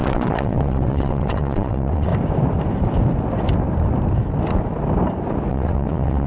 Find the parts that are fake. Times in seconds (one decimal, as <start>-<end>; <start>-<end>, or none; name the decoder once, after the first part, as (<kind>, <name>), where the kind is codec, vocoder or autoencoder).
0.0-2.1 (vocoder, WaveNeXt); 5.5-6.3